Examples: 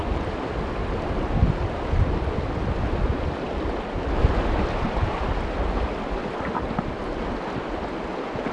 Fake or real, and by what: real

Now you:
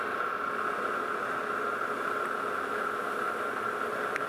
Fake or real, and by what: real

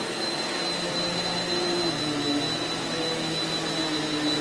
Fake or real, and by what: real